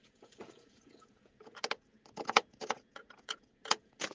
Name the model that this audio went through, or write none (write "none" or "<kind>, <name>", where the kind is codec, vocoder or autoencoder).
vocoder, Vocos